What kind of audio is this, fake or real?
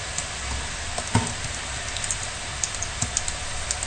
real